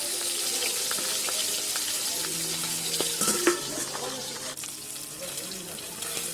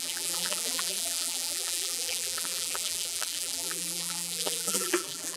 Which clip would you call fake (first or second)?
second